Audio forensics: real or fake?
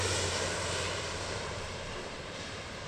fake